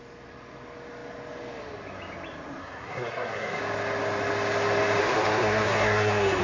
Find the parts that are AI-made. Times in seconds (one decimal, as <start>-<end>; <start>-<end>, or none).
2.6-3.6; 5.0-6.4